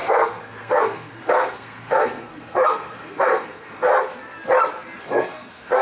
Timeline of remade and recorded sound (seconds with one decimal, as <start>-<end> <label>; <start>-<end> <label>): 0.0-3.9 remade; 3.9-5.0 recorded; 5.0-5.8 remade